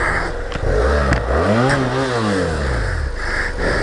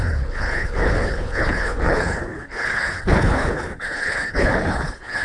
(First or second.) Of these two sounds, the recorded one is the first